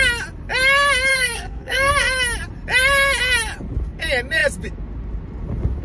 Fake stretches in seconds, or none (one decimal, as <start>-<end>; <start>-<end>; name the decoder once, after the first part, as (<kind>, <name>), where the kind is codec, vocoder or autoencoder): 1.1-1.9 (codec, SNAC)

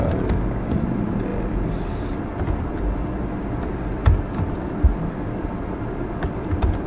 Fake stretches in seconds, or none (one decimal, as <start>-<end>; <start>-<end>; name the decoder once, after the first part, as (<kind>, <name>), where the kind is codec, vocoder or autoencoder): none

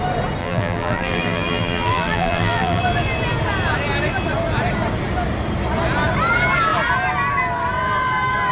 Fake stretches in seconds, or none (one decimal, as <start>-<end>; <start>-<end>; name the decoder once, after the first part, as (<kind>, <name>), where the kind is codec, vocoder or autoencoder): 0.4-2.8 (vocoder, BigVGAN v2)

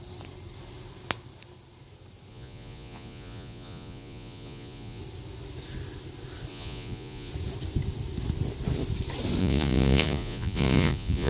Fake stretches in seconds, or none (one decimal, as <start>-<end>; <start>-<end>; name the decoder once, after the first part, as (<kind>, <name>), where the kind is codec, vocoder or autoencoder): 2.3-5.0 (vocoder, Vocos); 6.5-7.3; 9.4-11.3